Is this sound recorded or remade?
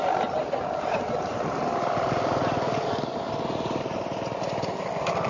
recorded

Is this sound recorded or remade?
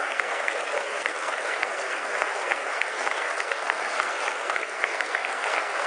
remade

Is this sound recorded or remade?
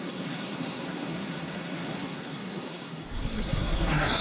remade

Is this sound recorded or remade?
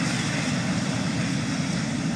recorded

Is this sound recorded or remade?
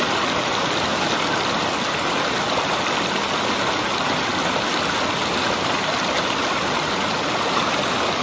recorded